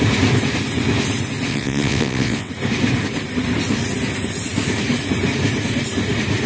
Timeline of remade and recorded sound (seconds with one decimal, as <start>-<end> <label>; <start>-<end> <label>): 0.0-1.5 recorded; 1.5-2.5 remade; 2.5-6.5 recorded